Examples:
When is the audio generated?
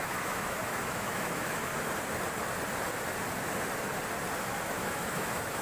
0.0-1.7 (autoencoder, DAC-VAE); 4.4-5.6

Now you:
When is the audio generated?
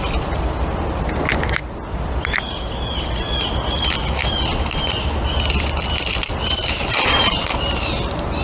none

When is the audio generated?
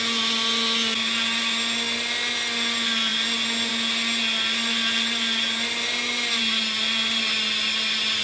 none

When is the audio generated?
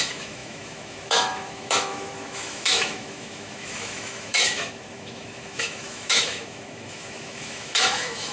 0.0-8.3 (autoencoder, DAC-VAE)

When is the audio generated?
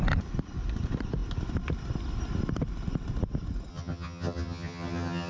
3.7-5.3 (vocoder, HiFi-GAN)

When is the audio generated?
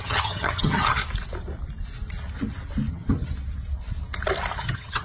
0.0-1.0 (vocoder, HiFi-GAN); 2.9-3.3; 4.6-5.0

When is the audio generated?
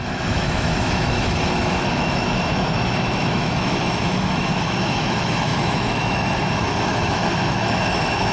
0.0-8.3 (autoencoder, DAC-VAE)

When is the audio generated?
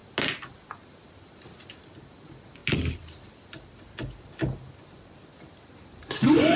none